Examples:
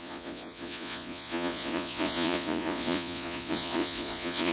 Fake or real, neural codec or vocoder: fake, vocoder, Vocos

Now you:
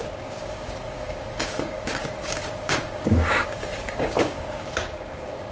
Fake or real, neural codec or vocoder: fake, codec, DAC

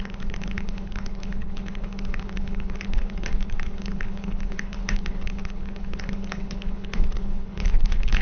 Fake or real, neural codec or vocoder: fake, codec, HILCodec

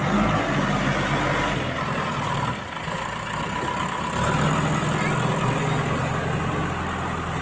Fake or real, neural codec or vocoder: real